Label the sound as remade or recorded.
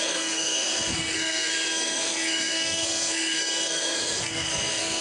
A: remade